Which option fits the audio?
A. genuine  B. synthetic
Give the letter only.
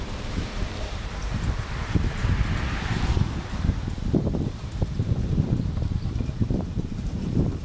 B